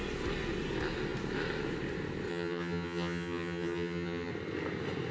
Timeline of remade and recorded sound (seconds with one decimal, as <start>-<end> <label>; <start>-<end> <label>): 0.0-2.3 recorded; 2.3-4.3 remade; 4.3-5.1 recorded